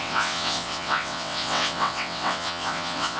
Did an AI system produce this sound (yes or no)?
yes